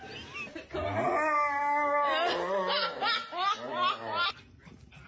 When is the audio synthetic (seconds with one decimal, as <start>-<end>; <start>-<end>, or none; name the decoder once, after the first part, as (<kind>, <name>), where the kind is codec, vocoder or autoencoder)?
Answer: none